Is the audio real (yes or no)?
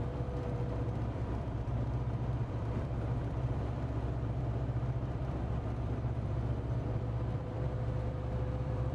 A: no